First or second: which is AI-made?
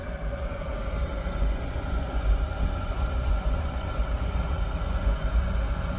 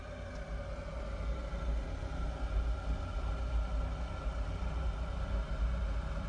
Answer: first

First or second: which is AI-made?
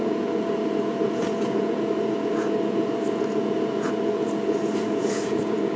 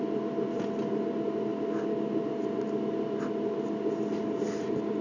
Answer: first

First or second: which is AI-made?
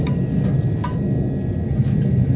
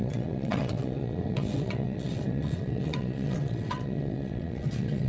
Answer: second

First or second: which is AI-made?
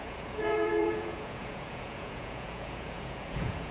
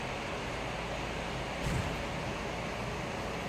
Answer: first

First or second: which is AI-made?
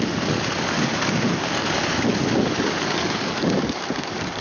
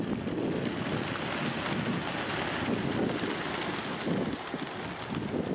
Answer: first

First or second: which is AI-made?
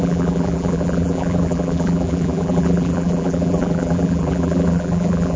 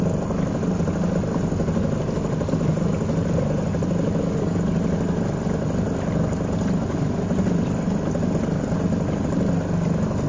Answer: first